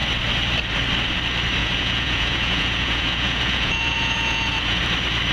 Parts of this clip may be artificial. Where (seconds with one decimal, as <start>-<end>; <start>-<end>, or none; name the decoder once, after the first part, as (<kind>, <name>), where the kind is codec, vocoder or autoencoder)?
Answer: 1.6-4.8 (vocoder, Vocos)

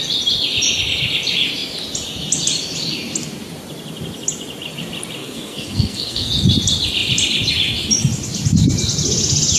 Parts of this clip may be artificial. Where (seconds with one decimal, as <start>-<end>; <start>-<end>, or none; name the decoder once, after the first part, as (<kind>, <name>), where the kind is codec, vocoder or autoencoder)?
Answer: 5.2-6.3 (codec, SNAC)